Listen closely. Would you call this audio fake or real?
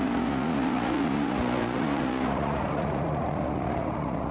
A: fake